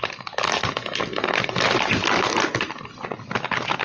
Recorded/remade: recorded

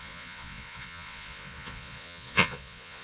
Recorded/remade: remade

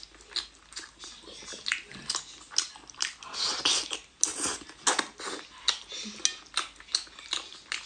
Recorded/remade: recorded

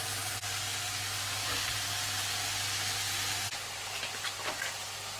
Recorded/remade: remade